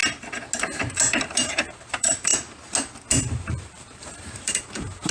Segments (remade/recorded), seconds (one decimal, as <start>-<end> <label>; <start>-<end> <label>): 0.0-1.1 recorded; 1.1-2.3 remade; 2.3-3.3 recorded; 3.3-5.1 remade